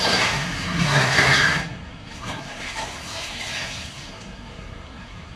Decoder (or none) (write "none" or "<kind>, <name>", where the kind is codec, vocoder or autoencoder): codec, SNAC